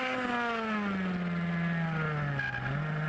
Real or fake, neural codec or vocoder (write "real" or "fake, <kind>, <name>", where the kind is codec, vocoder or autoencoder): real